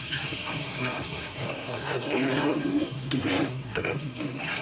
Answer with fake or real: fake